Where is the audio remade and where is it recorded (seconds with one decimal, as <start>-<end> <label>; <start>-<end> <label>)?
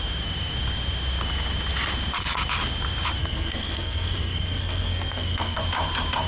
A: 0.0-3.2 recorded; 3.2-5.6 remade; 5.6-6.3 recorded